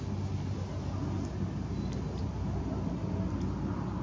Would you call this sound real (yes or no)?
yes